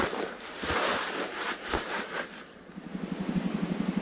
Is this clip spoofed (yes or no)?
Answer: no